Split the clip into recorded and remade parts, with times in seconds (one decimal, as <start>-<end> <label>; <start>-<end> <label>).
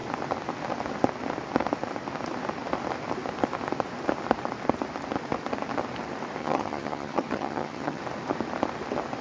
0.0-6.4 recorded; 6.4-8.0 remade; 8.0-9.2 recorded